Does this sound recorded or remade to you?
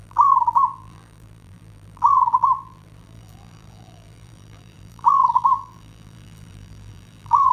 remade